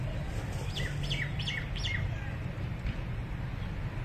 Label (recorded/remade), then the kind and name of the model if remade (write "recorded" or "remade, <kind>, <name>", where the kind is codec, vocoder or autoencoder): recorded